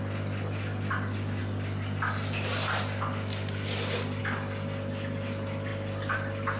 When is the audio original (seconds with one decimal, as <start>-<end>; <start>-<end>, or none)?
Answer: 0.0-6.6